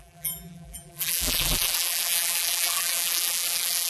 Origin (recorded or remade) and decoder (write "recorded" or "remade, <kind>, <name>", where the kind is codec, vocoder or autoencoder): remade, vocoder, BigVGAN v2